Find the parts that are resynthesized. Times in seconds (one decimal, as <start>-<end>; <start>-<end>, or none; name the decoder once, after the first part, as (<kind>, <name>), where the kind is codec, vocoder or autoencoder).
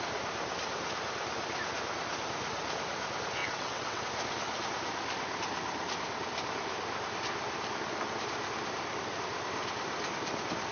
3.4-4.0 (vocoder, WaveNeXt)